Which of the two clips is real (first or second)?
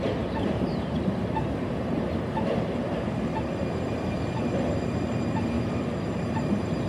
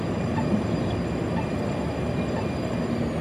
second